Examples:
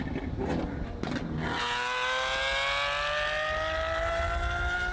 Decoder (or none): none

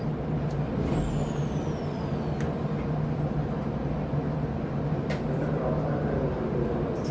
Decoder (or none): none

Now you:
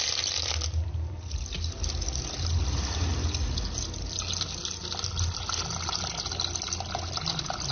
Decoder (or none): none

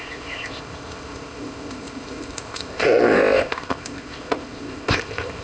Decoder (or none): codec, ZipCodec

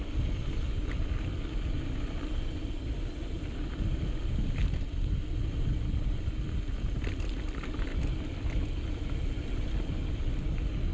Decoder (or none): none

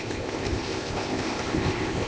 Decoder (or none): codec, ZipCodec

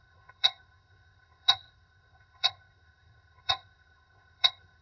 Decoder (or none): codec, ZipCodec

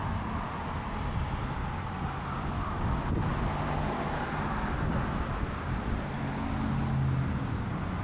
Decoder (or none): none